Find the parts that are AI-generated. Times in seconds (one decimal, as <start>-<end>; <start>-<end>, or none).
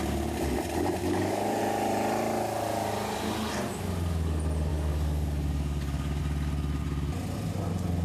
1.0-1.6; 4.7-6.2